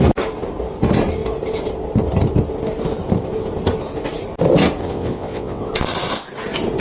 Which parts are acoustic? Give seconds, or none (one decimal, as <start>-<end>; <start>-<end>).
0.0-4.8; 5.7-6.8

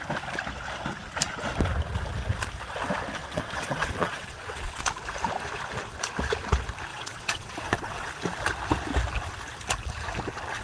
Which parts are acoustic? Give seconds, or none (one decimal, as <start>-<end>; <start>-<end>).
0.0-3.2; 4.8-6.9; 8.1-10.6

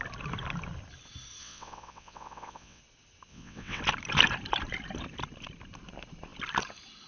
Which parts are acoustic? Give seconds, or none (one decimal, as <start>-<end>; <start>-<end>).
0.0-1.4; 2.8-3.3; 3.8-7.1